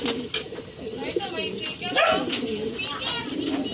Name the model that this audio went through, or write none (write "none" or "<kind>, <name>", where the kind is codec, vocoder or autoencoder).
none